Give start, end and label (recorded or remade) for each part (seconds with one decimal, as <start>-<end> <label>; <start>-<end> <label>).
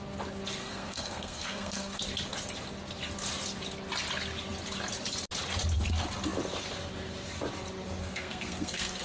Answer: 0.0-0.6 recorded; 0.6-2.0 remade; 2.0-8.0 recorded; 8.0-9.0 remade